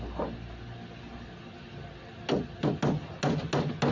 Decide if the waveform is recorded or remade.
recorded